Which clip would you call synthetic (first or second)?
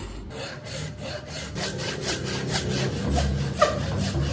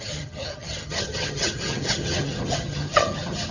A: second